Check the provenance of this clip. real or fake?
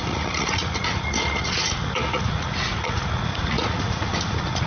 fake